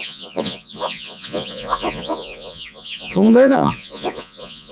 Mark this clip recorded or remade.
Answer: remade